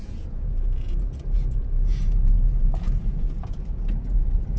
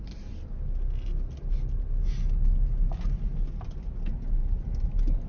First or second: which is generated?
first